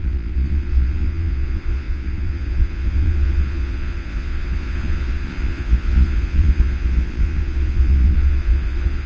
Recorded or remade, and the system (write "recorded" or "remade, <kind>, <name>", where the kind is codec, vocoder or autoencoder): remade, vocoder, Vocos